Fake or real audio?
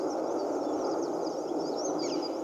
real